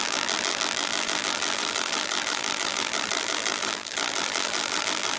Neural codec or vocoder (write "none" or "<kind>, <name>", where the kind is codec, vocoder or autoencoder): vocoder, BigVGAN v2